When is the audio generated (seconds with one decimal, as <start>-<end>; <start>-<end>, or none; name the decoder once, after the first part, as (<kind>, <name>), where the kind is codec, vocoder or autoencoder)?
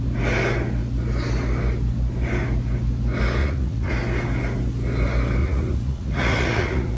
3.4-3.9 (vocoder, Vocos); 5.4-7.0